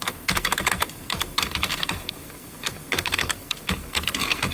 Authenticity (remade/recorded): remade